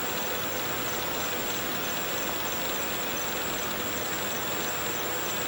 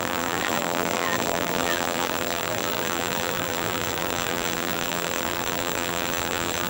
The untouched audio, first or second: first